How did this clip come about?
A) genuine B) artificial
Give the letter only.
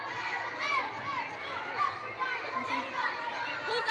A